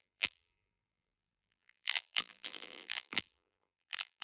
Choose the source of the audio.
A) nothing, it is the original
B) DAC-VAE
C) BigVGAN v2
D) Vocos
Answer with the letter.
C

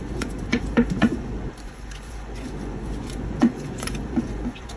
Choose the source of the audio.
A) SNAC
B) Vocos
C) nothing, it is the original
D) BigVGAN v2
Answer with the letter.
B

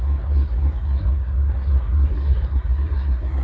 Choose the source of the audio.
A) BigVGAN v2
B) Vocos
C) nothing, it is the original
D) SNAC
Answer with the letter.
D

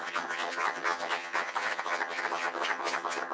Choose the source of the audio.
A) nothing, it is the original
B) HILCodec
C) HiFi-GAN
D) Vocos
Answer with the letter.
C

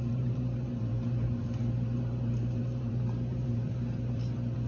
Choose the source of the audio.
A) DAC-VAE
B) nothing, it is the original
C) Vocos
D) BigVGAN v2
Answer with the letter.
D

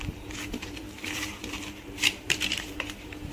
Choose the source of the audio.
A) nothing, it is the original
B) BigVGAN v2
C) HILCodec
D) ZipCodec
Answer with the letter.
B